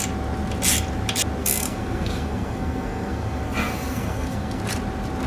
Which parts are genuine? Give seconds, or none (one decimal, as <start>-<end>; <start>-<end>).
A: 0.0-1.4; 4.6-5.3